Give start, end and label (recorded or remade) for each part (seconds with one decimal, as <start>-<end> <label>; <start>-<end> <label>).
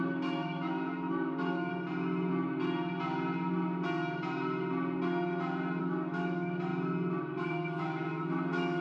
0.0-1.7 remade; 1.7-5.8 recorded; 5.8-6.7 remade; 6.7-7.2 recorded; 7.2-8.8 remade